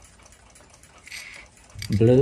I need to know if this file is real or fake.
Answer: fake